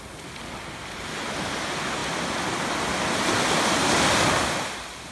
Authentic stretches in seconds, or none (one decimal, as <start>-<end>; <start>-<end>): 0.0-5.1